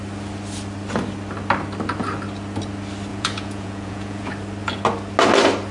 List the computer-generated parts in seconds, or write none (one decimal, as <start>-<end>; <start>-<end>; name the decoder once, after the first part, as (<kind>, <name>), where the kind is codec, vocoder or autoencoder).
3.1-4.3 (vocoder, Vocos)